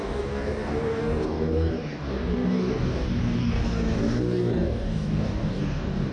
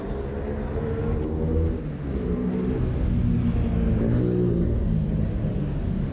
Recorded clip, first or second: second